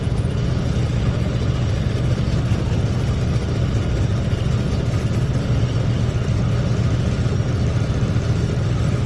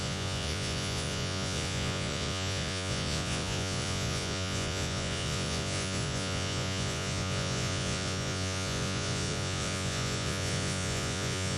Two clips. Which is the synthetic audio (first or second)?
second